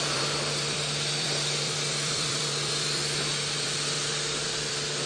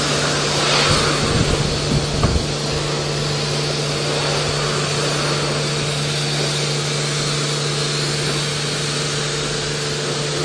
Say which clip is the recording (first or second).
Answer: second